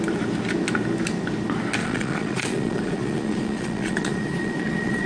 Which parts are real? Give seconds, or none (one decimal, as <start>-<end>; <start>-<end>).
0.0-1.8